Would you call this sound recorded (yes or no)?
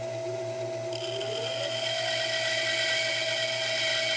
yes